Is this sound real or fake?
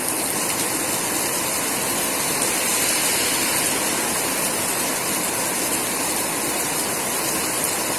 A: real